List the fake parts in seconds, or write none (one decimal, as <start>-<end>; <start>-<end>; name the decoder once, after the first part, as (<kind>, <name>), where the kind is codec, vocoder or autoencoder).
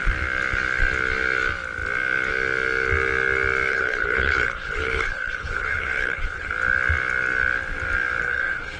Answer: 3.7-6.5 (codec, HILCodec); 8.2-8.8